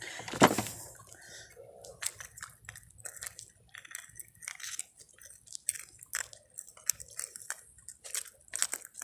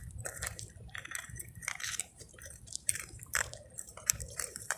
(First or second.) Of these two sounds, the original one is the first